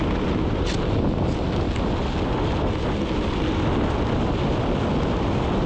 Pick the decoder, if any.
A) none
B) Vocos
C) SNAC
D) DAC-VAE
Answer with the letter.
A